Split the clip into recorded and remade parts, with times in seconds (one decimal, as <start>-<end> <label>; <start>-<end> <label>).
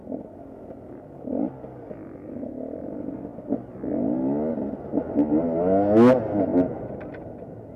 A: 0.0-7.8 recorded